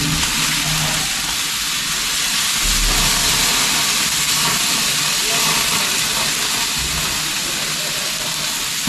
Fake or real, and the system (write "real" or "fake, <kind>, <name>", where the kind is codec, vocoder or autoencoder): real